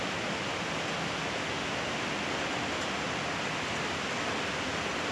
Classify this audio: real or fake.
real